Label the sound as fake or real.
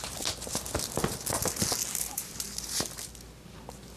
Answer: real